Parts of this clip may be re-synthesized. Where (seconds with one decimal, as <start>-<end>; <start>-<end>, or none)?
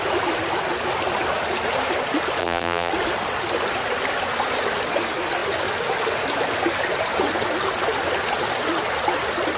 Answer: 2.4-2.9